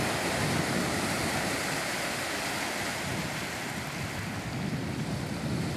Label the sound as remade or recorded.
recorded